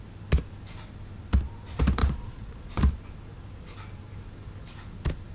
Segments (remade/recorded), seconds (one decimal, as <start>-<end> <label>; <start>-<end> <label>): 0.0-2.0 recorded; 2.0-2.8 remade; 2.8-5.3 recorded